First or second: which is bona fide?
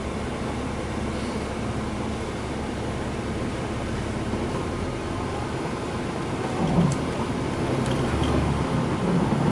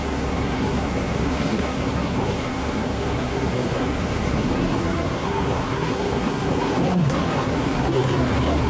first